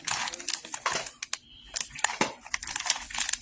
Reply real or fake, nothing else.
real